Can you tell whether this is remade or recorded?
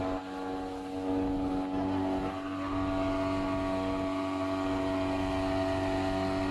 recorded